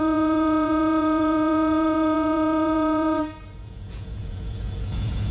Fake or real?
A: fake